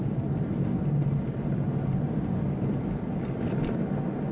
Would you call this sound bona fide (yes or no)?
yes